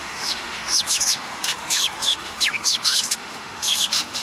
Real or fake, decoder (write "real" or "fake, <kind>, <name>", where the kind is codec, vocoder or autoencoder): fake, autoencoder, DAC-VAE